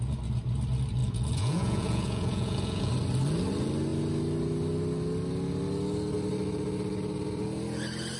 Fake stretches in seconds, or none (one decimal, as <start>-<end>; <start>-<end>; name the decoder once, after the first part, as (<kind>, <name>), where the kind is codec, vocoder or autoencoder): 1.0-2.9 (vocoder, Vocos)

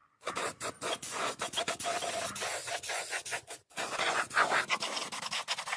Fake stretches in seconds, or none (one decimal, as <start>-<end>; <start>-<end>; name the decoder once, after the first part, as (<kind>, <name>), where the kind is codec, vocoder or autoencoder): 0.0-2.2 (vocoder, Vocos); 2.6-4.5